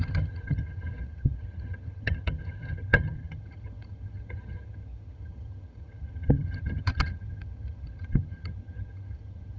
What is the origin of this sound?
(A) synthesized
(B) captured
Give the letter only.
A